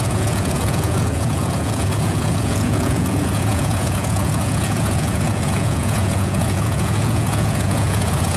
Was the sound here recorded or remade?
remade